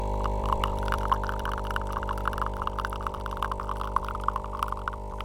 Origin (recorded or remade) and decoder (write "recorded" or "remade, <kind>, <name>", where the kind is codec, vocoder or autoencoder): remade, vocoder, BigVGAN v2